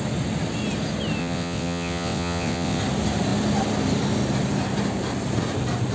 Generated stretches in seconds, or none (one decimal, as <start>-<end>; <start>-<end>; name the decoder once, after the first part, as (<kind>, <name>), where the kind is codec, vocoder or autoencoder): 1.2-2.8 (vocoder, WaveNeXt)